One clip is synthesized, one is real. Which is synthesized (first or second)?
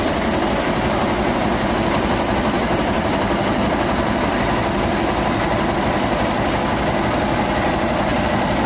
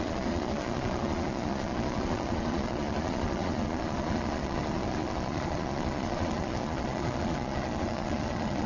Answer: second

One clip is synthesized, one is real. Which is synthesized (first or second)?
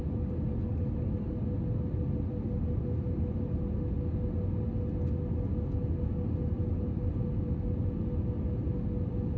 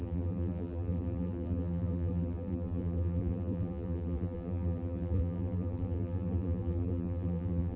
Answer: second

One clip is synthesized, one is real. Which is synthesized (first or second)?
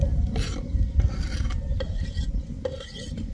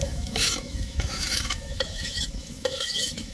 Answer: second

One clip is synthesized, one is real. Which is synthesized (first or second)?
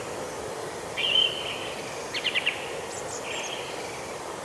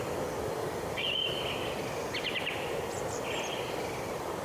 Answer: second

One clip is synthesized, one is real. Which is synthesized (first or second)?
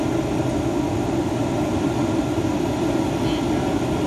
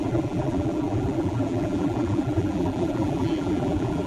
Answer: second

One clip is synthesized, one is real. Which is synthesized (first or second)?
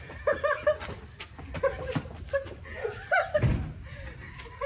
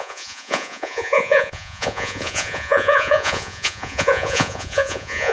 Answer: second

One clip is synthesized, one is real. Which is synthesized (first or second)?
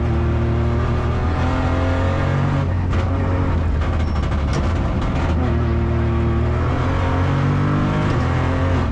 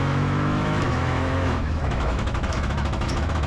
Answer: second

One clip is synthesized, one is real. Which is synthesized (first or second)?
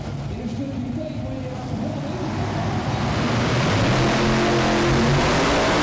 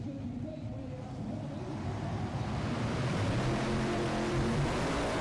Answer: second